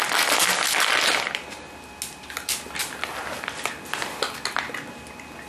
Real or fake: real